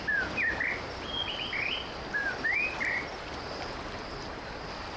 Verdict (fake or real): real